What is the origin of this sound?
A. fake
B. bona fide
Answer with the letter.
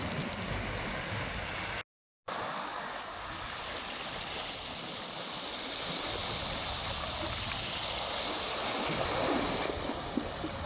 B